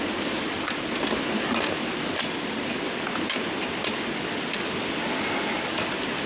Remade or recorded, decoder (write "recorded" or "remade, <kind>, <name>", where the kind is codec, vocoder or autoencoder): recorded